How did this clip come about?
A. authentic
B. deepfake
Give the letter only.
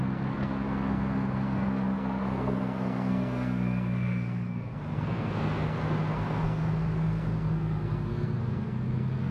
B